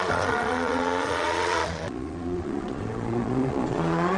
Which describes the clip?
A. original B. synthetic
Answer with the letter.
B